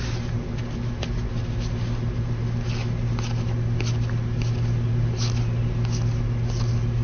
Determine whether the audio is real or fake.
real